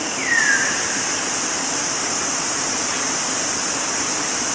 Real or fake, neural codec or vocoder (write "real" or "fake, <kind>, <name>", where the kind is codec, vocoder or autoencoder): real